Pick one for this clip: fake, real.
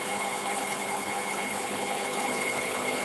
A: fake